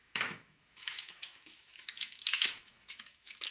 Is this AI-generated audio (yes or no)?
yes